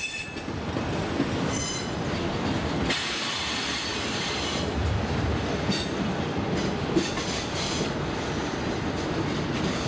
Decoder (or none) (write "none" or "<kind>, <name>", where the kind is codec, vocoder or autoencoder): none